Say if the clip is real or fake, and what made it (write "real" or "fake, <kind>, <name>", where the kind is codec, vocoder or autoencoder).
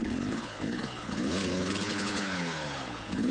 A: fake, codec, HILCodec